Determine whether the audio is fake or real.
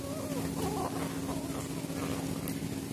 real